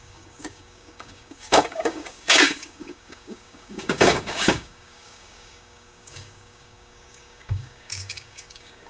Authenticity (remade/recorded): remade